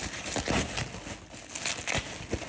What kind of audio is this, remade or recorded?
recorded